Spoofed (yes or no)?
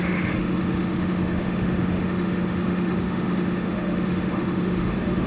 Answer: yes